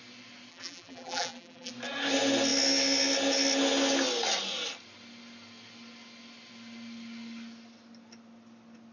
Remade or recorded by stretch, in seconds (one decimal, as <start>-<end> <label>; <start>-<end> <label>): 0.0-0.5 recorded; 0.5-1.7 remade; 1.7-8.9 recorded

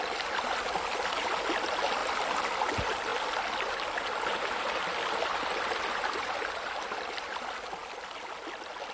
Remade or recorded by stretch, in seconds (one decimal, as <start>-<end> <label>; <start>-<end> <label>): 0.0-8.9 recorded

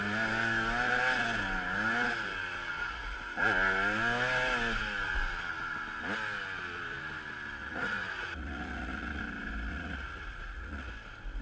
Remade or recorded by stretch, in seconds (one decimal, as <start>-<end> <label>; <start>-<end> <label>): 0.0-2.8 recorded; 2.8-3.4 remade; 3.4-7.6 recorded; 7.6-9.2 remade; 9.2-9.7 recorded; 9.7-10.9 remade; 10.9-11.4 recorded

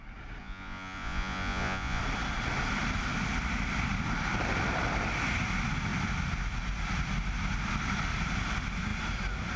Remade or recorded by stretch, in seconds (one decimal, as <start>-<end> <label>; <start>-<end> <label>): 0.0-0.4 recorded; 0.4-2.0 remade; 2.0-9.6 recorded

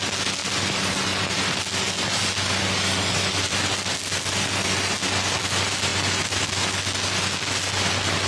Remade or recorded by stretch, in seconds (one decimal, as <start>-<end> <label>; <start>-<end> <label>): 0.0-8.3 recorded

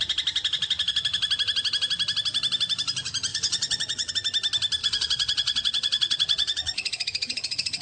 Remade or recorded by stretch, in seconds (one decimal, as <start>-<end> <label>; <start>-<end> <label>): 0.0-3.3 recorded; 3.3-4.1 remade; 4.1-4.8 recorded; 4.8-7.8 remade